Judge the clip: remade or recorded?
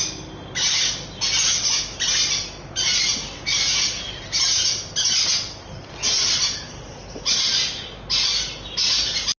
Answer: recorded